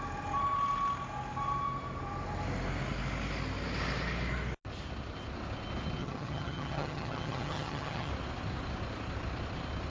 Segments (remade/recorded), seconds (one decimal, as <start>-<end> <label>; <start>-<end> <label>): 0.0-6.0 recorded; 6.0-8.1 remade; 8.1-9.9 recorded